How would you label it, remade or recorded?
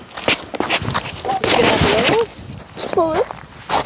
recorded